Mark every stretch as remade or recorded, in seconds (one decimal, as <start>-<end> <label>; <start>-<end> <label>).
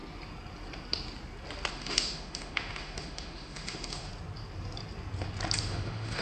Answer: 0.0-1.7 recorded; 1.7-4.1 remade; 4.1-5.6 recorded; 5.6-6.2 remade